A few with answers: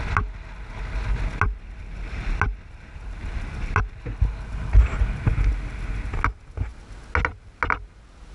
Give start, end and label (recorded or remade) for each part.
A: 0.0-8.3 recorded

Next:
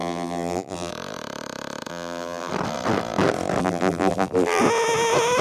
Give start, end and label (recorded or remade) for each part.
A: 0.0-0.9 remade; 0.9-1.9 recorded; 1.9-2.5 remade; 2.5-3.6 recorded; 3.6-4.6 remade; 4.6-5.4 recorded